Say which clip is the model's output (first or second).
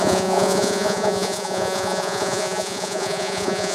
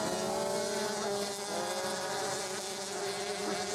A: first